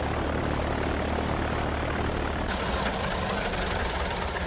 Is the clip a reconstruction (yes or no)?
no